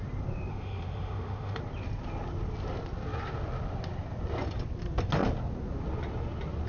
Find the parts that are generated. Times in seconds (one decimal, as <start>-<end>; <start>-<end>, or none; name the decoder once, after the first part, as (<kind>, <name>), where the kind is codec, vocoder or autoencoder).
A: 0.5-1.6 (autoencoder, DAC-VAE)